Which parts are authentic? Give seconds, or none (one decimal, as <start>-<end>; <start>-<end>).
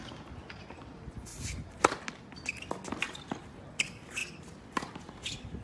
0.0-4.2; 5.0-5.6